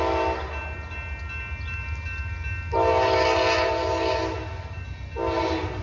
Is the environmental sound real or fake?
real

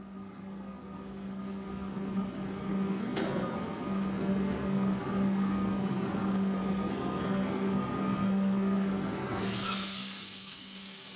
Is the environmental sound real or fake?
fake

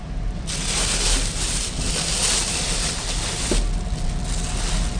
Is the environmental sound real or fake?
real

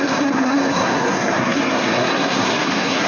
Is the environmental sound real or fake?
fake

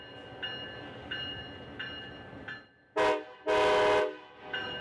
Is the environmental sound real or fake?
real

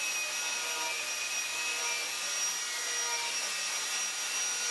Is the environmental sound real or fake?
real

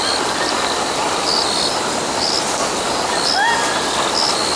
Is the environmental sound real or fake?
real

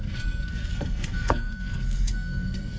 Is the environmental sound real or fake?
fake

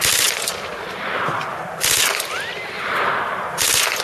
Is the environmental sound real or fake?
real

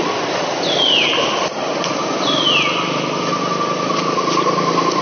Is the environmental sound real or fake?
real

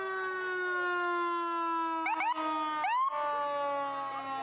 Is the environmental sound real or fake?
real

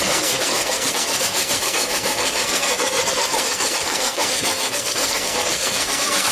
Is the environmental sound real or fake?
fake